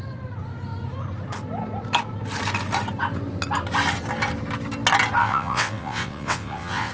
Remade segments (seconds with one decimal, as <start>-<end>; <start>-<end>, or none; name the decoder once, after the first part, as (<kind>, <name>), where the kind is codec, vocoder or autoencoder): 5.2-6.9 (vocoder, WaveNeXt)